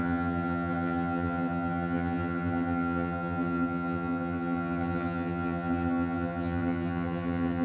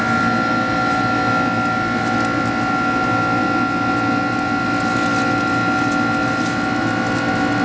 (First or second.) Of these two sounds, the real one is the second